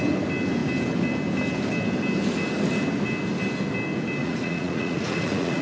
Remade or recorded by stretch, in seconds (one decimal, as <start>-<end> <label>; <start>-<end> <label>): 0.0-4.2 recorded; 4.2-5.6 remade